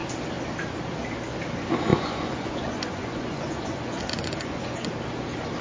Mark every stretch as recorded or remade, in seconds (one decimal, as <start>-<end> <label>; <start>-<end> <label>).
0.0-1.9 recorded; 1.9-4.9 remade; 4.9-5.6 recorded